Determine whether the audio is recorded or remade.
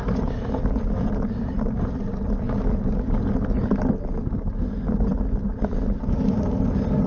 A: recorded